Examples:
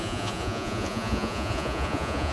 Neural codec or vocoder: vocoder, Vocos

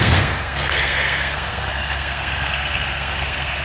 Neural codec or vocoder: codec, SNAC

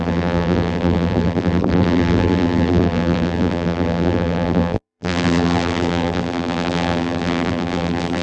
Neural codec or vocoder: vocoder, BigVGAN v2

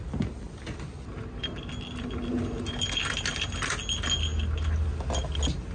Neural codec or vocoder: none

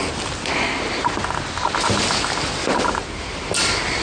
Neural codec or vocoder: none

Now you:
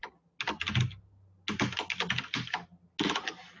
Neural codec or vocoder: none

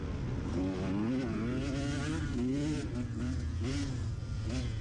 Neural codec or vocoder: none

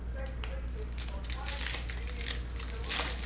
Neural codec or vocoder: none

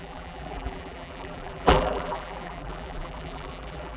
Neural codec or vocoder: vocoder, BigVGAN v2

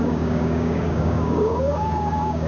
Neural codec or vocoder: codec, DAC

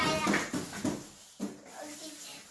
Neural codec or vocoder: none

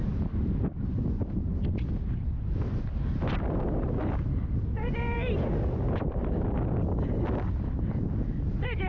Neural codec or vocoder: none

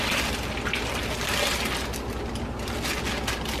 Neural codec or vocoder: none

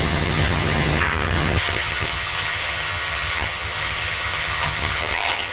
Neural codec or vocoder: vocoder, HiFi-GAN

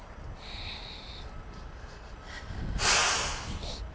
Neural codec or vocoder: none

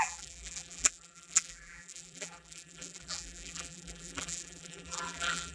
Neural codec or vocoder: vocoder, BigVGAN v2